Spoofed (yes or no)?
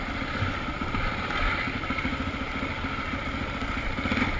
no